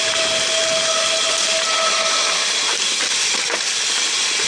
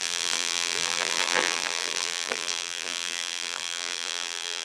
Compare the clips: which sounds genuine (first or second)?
first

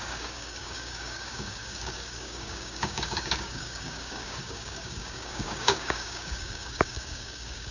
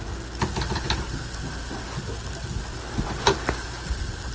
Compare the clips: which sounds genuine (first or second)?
second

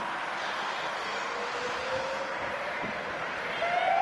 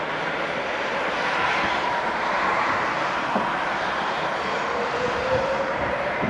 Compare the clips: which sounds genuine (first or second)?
first